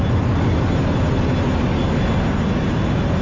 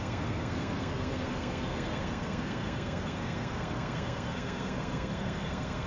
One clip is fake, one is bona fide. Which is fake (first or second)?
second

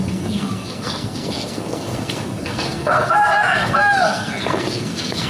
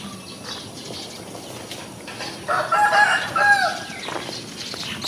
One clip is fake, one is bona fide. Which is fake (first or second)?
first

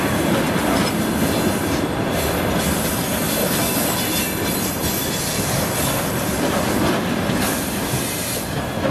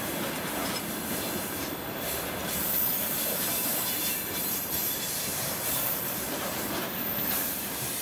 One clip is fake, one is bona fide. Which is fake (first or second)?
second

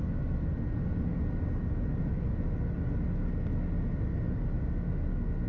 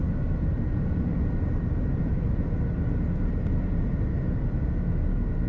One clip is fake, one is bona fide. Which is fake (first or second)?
second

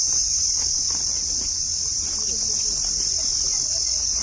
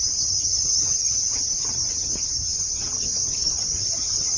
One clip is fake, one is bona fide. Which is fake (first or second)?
second